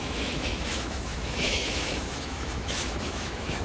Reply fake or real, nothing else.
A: fake